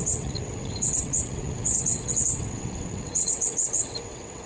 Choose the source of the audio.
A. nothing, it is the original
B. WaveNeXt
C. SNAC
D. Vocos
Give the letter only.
B